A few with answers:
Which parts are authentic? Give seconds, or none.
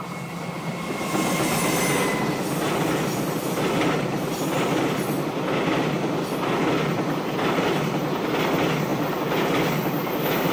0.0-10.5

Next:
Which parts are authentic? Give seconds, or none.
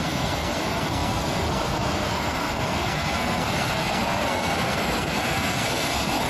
none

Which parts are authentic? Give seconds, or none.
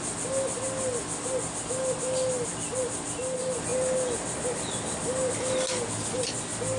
0.0-6.8